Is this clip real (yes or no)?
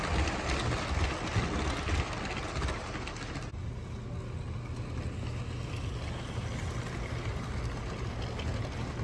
yes